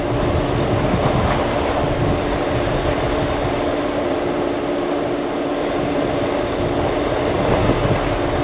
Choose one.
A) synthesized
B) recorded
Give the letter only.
B